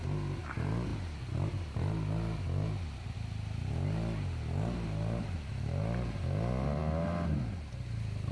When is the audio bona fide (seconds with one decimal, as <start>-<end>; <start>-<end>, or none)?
0.0-8.3